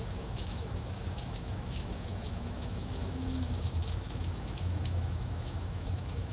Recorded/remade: remade